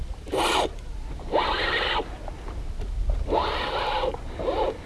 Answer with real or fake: real